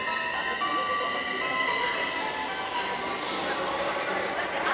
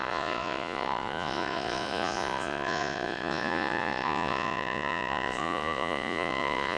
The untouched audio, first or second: first